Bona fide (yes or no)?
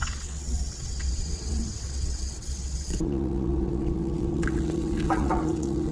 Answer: no